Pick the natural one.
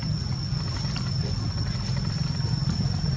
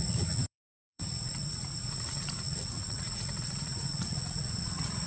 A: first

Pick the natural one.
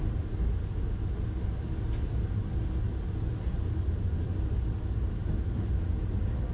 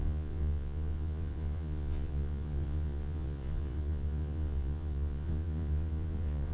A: first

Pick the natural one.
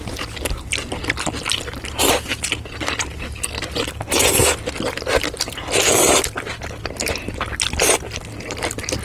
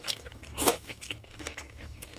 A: first